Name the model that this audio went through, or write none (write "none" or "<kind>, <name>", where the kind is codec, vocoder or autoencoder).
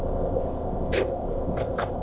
codec, ZipCodec